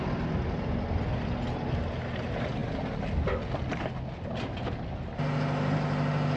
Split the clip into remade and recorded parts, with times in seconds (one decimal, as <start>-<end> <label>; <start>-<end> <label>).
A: 0.0-6.4 recorded